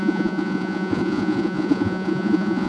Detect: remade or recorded remade